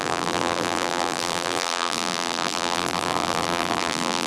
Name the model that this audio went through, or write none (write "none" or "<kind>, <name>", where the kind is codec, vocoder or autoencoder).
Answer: vocoder, BigVGAN v2